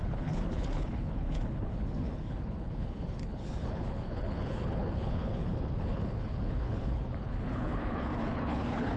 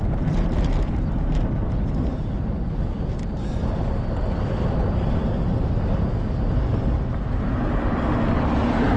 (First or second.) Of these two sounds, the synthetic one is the first